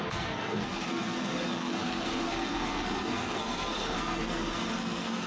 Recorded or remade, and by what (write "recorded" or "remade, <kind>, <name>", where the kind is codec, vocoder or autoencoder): remade, codec, SNAC